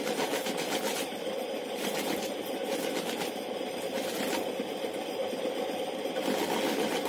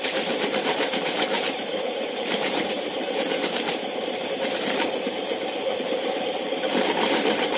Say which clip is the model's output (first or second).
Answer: second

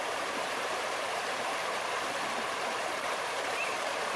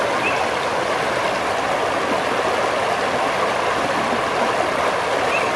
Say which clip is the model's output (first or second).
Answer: first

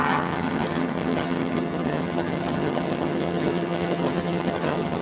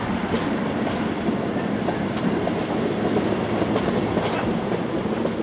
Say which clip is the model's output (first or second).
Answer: first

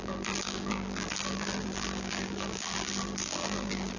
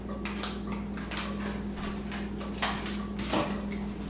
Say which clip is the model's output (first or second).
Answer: first